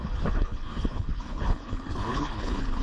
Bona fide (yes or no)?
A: no